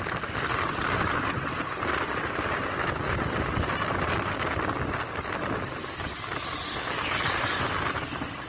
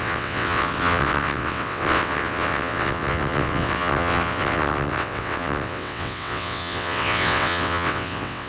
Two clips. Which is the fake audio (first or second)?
second